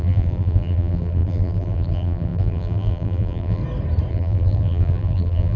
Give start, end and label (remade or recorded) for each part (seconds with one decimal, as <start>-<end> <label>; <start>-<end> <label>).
0.0-3.6 remade; 3.6-4.1 recorded; 4.1-5.6 remade